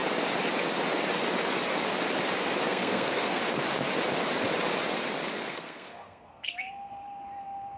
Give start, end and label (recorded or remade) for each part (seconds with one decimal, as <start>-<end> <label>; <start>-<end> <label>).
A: 0.0-2.7 recorded; 2.7-3.4 remade; 3.4-5.5 recorded; 5.5-6.9 remade; 6.9-7.8 recorded